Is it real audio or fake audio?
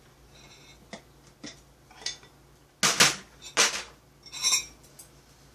real